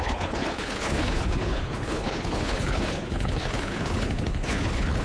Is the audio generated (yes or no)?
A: yes